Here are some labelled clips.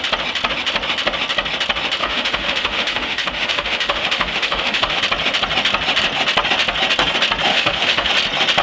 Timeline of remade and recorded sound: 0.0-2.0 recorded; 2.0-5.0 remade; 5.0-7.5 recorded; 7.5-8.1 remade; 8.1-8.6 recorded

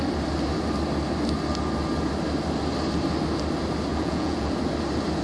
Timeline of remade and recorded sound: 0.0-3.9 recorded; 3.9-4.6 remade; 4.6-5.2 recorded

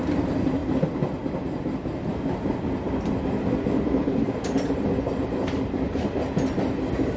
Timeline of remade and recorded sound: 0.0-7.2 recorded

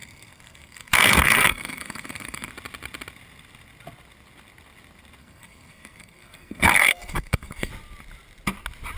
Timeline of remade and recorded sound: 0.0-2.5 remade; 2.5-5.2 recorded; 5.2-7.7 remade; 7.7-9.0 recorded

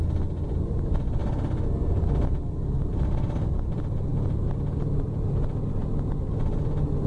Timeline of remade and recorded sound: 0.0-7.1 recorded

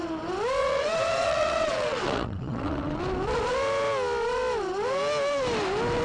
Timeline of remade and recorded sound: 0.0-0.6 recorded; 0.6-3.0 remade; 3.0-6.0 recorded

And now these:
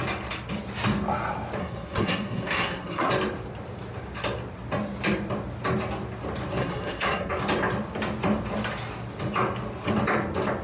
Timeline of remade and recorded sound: 0.0-1.6 recorded; 1.6-3.1 remade; 3.1-6.6 recorded; 6.6-7.3 remade; 7.3-10.6 recorded

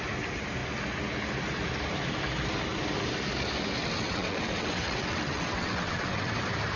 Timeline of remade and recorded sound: 0.0-3.8 recorded; 3.8-6.3 remade; 6.3-6.8 recorded